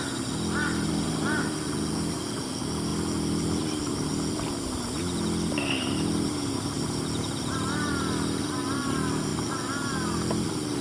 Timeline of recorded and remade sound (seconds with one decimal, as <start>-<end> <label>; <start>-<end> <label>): 0.0-10.8 recorded